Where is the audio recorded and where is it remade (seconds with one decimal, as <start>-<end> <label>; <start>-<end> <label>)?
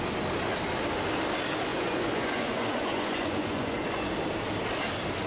0.0-1.7 recorded; 1.7-4.1 remade; 4.1-5.3 recorded